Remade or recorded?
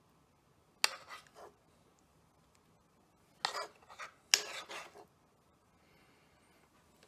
recorded